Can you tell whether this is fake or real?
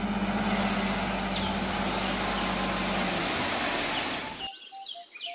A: real